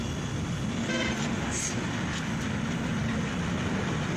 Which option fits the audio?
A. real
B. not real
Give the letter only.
A